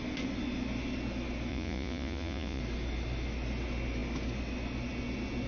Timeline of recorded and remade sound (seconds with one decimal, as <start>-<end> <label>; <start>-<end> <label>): 0.0-1.5 recorded; 1.5-2.6 remade; 2.6-5.5 recorded